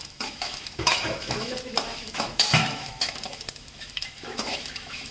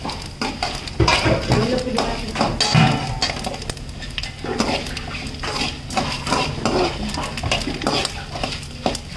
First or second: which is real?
second